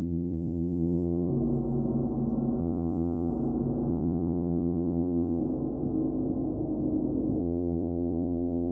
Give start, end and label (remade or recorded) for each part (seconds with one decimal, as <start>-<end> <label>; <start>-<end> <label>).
0.0-1.3 remade; 1.3-2.6 recorded; 2.6-3.3 remade; 3.3-3.9 recorded; 3.9-5.4 remade; 5.4-7.4 recorded; 7.4-8.7 remade